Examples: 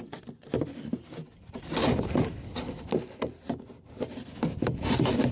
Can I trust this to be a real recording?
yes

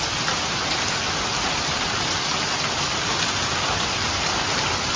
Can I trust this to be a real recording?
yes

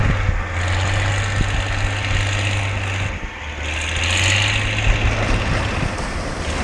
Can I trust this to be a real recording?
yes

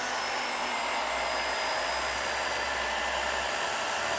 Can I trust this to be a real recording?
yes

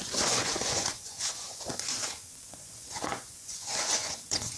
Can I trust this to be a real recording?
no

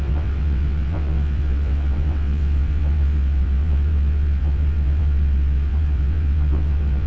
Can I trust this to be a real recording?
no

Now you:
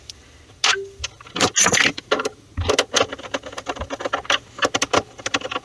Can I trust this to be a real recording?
yes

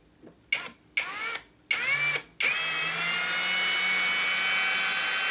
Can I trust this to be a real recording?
yes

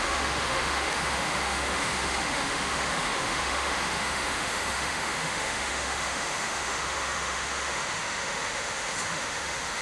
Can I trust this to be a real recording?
no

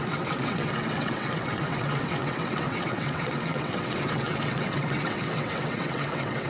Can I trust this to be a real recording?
no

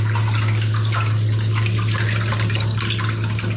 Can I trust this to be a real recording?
yes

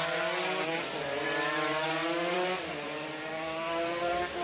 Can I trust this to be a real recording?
no